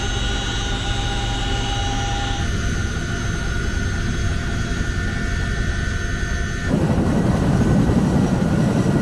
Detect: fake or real real